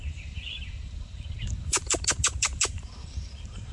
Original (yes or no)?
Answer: no